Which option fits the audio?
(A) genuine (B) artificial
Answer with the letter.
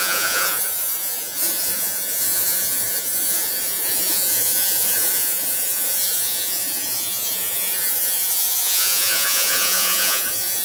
B